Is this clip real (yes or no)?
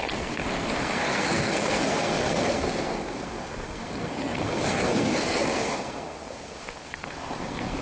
no